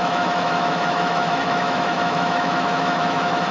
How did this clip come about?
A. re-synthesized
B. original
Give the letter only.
A